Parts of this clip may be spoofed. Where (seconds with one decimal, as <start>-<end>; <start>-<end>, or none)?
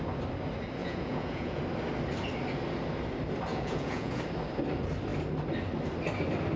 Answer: 0.8-1.6; 3.5-4.2